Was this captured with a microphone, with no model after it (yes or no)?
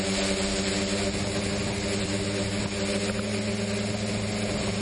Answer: yes